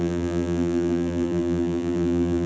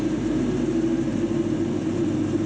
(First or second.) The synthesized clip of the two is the first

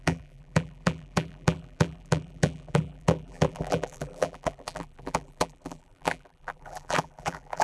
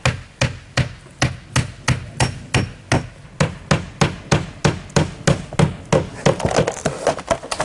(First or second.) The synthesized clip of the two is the first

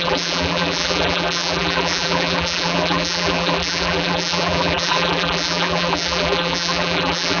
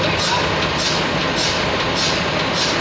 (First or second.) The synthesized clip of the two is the first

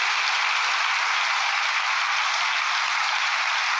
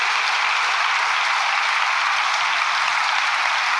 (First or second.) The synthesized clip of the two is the second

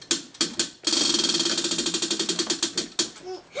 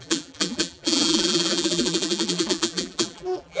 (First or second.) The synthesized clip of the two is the second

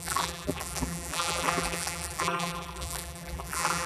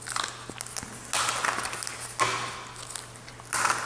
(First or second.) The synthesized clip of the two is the first